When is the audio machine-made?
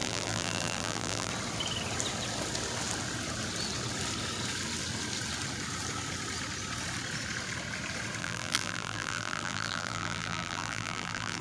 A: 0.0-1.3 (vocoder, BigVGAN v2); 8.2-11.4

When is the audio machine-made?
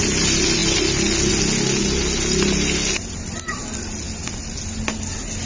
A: none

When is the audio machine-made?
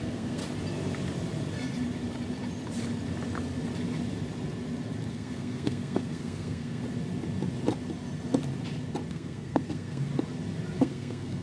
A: 0.0-0.4 (codec, SNAC); 5.1-6.8; 9.1-10.1; 10.8-11.4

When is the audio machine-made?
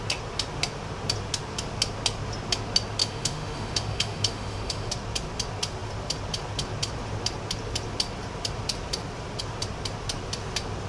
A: 3.0-4.9 (autoencoder, DAC-VAE)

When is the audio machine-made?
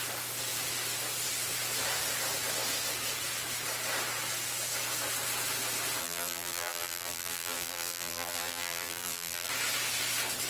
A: 6.0-9.5 (vocoder, BigVGAN v2)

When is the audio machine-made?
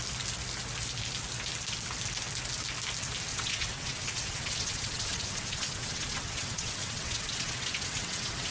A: 3.3-8.5 (vocoder, WaveNeXt)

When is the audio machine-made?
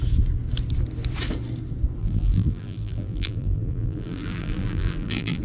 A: 2.0-5.4 (vocoder, BigVGAN v2)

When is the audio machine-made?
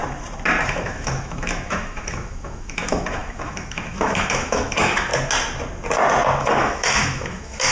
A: 0.7-5.1 (autoencoder, DAC-VAE); 6.4-7.7